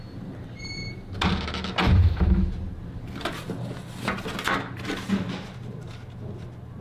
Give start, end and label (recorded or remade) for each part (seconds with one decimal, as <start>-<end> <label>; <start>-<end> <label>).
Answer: 0.0-1.9 recorded; 1.9-2.5 remade; 2.5-6.8 recorded